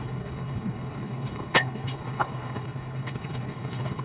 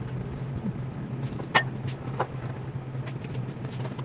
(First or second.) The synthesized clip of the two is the first